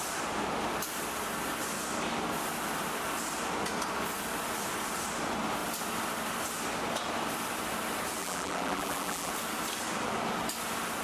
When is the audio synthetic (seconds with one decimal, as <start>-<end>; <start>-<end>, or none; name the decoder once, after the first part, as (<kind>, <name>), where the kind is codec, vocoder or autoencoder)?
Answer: 8.2-9.3 (vocoder, BigVGAN v2)

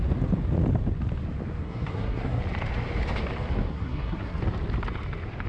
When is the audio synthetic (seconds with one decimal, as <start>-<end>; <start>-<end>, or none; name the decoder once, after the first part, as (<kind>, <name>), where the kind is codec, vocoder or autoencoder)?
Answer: 1.6-2.4 (codec, SNAC); 3.7-4.4

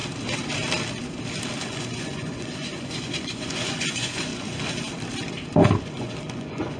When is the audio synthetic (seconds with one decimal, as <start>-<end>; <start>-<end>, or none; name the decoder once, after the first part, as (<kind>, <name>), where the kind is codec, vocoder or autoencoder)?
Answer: 1.6-4.3 (vocoder, Vocos); 5.8-6.8

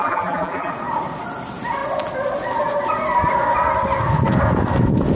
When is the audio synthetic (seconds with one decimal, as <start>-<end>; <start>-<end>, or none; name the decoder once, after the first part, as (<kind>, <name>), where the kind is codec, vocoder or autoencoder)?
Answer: 0.0-0.7 (vocoder, BigVGAN v2)

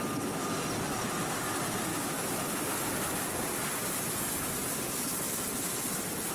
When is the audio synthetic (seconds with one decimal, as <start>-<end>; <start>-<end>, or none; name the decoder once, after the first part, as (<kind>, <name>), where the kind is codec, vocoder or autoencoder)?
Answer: 1.9-2.4 (autoencoder, DAC-VAE)

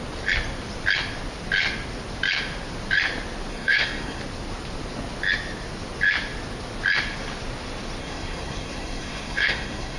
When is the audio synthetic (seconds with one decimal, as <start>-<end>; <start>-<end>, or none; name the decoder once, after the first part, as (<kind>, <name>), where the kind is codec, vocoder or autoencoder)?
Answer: 3.5-4.2 (codec, SNAC); 8.0-10.0

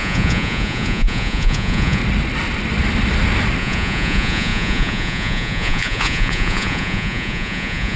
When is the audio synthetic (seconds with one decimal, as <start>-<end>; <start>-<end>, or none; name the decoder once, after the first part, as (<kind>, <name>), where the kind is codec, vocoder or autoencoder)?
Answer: 0.0-2.0 (vocoder, Vocos); 3.6-8.0

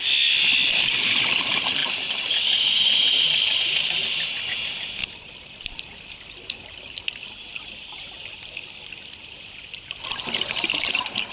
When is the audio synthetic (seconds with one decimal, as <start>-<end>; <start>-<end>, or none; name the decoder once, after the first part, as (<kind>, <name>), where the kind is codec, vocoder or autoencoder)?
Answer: 1.8-4.4 (vocoder, BigVGAN v2); 5.0-9.9